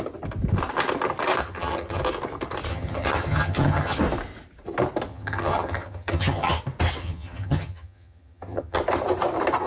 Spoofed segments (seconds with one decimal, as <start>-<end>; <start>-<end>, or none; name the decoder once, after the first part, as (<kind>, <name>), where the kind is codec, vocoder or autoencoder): 1.4-2.0 (vocoder, HiFi-GAN); 2.7-4.0; 5.1-6.6; 7.0-8.8

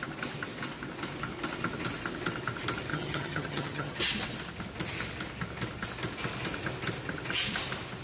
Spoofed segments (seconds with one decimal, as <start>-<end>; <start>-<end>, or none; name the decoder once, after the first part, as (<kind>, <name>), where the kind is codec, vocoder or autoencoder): 2.9-4.0 (vocoder, HiFi-GAN)